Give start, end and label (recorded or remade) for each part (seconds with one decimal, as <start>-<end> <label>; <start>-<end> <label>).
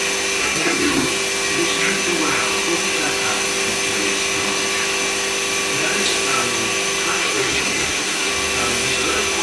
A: 0.0-0.4 recorded; 0.4-1.1 remade; 1.1-7.2 recorded; 7.2-8.3 remade; 8.3-9.4 recorded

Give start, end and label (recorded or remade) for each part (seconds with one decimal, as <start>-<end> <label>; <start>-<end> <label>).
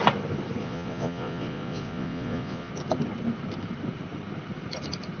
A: 0.0-0.6 recorded; 0.6-2.7 remade; 2.7-5.2 recorded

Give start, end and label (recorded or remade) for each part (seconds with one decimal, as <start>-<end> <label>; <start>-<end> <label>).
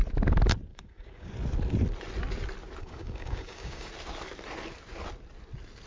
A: 0.0-0.7 recorded; 0.7-1.3 remade; 1.3-2.8 recorded; 2.8-3.9 remade; 3.9-5.9 recorded